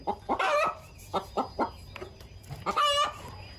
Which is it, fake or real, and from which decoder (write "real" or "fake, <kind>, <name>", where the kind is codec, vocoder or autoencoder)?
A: real